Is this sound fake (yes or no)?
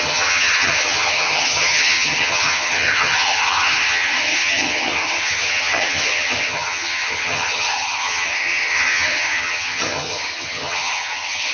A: yes